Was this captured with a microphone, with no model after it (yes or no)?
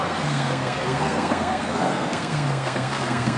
no